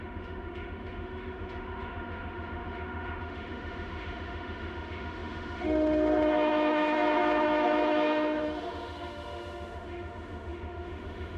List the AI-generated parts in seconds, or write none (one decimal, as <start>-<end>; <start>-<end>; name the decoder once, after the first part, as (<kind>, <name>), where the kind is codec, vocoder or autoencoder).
0.0-11.4 (autoencoder, DAC-VAE)